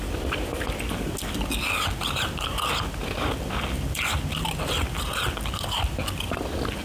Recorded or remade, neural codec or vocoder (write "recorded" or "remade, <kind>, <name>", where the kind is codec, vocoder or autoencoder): recorded